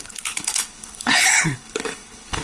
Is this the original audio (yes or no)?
no